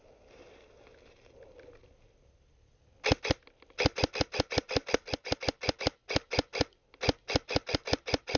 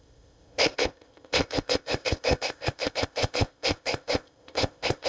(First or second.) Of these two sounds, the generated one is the second